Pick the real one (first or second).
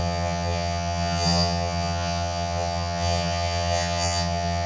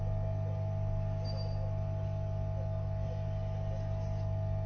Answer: second